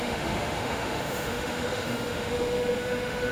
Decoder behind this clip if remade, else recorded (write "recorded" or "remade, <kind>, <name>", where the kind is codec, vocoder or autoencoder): remade, autoencoder, DAC-VAE